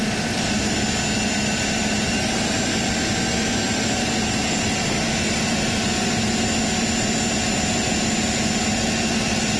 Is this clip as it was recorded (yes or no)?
yes